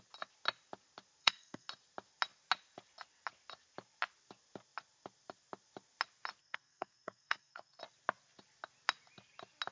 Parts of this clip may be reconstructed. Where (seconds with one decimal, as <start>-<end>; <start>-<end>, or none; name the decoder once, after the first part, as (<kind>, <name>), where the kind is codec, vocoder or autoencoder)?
1.2-1.7 (codec, SNAC); 6.4-7.8